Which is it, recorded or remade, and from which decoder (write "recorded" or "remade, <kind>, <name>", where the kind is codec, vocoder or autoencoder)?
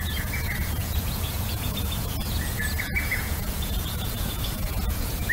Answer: remade, vocoder, Vocos